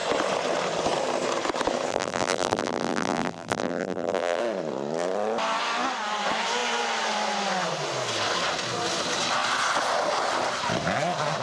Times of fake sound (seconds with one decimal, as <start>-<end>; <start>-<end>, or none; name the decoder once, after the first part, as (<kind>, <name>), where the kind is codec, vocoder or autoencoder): 1.9-4.4 (vocoder, BigVGAN v2)